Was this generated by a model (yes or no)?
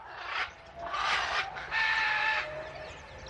no